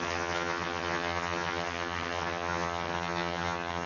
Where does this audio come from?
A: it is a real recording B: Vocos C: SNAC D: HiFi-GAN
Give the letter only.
D